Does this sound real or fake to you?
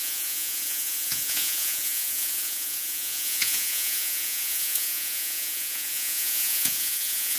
fake